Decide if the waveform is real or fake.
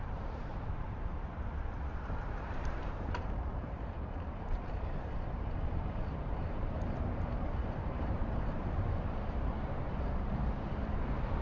fake